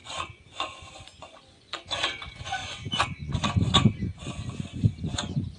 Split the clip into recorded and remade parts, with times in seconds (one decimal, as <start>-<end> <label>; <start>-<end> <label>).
0.0-5.6 remade